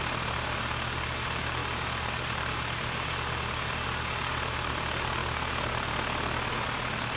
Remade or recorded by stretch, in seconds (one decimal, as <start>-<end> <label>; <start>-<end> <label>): 0.0-7.2 recorded